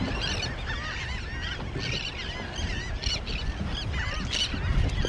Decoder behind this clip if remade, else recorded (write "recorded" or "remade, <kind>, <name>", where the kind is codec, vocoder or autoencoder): recorded